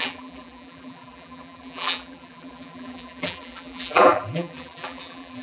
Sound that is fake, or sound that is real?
fake